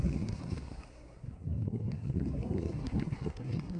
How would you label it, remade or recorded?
remade